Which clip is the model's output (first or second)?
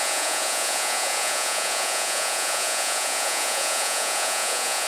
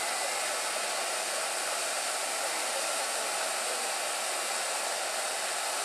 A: first